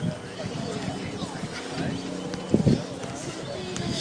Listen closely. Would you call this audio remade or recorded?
recorded